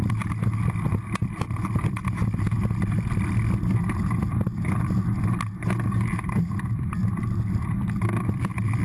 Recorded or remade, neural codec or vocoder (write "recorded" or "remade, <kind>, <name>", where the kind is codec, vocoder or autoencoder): recorded